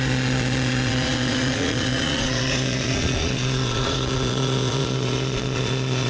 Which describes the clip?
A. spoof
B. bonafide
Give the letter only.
A